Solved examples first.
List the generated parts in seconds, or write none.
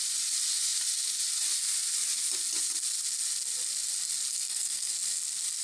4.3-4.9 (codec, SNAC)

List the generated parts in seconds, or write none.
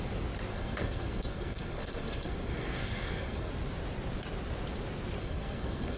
0.5-3.5 (codec, SNAC); 5.2-6.0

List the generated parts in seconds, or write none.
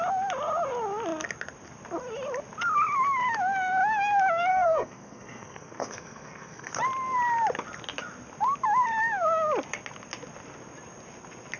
4.5-6.8 (codec, SNAC)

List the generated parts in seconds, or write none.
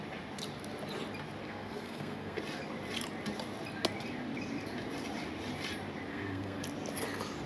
1.4-2.4 (codec, SNAC); 6.1-6.6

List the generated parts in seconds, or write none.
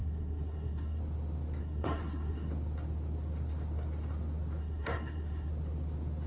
0.0-1.0 (codec, SNAC); 1.6-2.5; 4.6-5.5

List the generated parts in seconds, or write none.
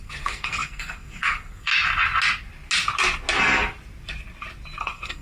0.0-1.7 (codec, SNAC); 4.8-5.2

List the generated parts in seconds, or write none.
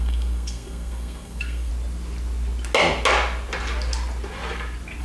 0.0-1.7 (codec, SNAC)